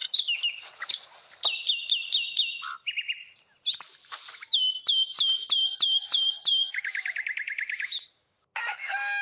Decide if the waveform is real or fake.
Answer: real